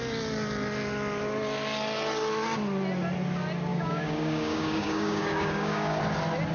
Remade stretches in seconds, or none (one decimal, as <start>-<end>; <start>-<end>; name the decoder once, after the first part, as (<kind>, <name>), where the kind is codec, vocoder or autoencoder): 3.7-6.0 (codec, DAC)